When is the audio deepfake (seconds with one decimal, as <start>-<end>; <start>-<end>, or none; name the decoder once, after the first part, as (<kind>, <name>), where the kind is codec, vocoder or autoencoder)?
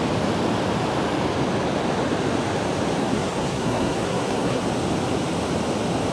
3.0-4.6 (codec, SNAC)